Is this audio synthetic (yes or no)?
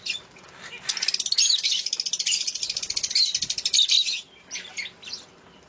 no